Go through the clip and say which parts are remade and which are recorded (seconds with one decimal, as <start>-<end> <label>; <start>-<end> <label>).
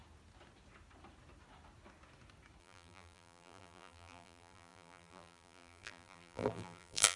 0.0-2.6 recorded; 2.6-7.2 remade